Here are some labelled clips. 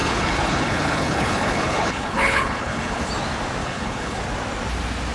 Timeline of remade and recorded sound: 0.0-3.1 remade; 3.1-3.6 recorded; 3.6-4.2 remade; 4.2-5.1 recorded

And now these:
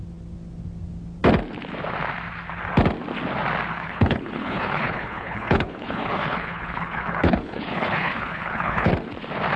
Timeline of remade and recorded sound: 0.0-3.7 recorded; 3.7-8.9 remade; 8.9-9.6 recorded

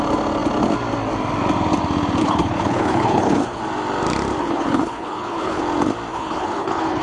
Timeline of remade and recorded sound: 0.0-2.2 recorded; 2.2-3.6 remade; 3.6-4.4 recorded; 4.4-5.6 remade; 5.6-6.1 recorded; 6.1-7.0 remade

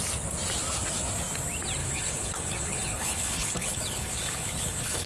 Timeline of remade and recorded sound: 0.0-1.8 recorded; 1.8-5.1 remade

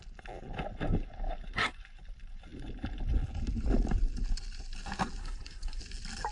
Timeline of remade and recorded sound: 0.0-5.2 recorded; 5.2-5.8 remade; 5.8-6.3 recorded